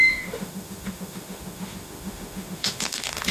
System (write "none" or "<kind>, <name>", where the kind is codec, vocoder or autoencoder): autoencoder, DAC-VAE